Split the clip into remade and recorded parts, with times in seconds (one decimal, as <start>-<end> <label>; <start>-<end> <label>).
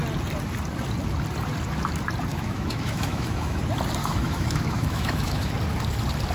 0.0-2.3 recorded; 2.3-3.6 remade; 3.6-4.0 recorded; 4.0-5.5 remade; 5.5-6.3 recorded